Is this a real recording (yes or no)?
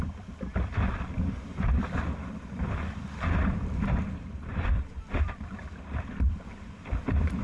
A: no